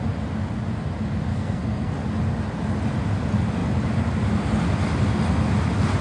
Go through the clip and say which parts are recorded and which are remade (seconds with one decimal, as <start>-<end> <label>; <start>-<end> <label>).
0.0-1.3 recorded; 1.3-1.9 remade; 1.9-6.0 recorded